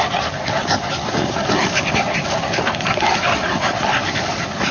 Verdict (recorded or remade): recorded